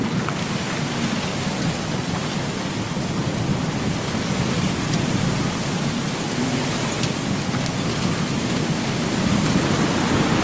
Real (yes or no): yes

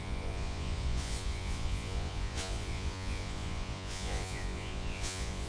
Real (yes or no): no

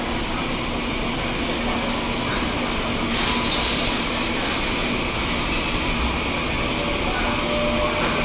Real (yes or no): yes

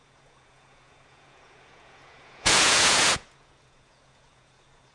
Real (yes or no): no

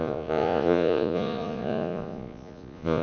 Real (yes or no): no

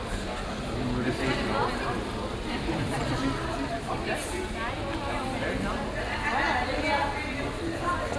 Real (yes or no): yes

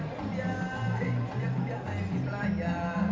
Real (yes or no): yes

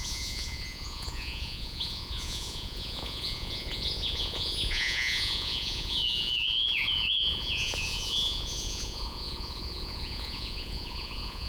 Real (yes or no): no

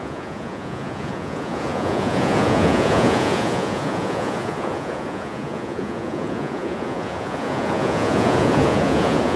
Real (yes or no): no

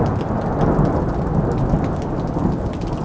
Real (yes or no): yes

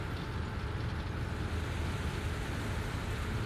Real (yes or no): yes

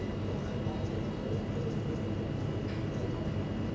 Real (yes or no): yes